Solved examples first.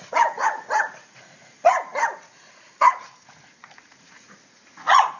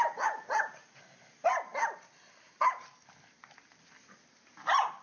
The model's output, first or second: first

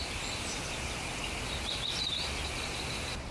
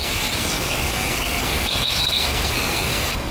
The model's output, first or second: second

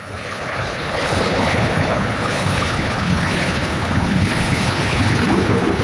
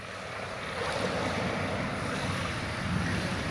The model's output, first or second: first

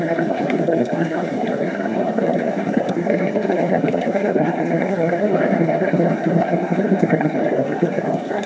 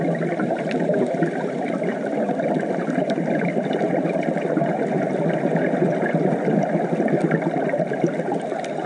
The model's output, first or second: first